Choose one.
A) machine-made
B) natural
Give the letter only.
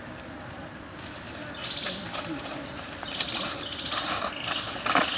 B